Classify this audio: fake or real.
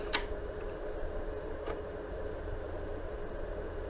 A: fake